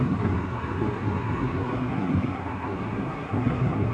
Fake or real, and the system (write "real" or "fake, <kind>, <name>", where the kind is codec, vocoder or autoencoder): fake, codec, SNAC